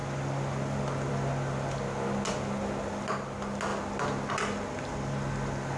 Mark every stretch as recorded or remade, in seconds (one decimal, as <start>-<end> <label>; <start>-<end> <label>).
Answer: 0.0-5.8 recorded